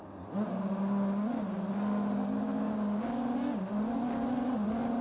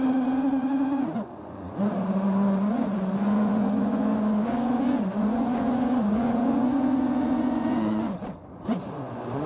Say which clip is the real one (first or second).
first